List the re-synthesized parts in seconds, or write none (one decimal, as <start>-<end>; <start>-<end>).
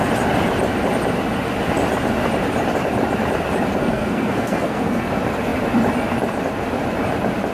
3.8-5.1